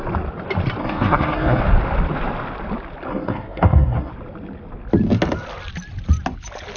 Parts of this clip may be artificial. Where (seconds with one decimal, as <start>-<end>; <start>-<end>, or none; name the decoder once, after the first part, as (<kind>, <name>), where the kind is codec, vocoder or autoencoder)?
0.8-1.6 (codec, SNAC); 3.1-4.1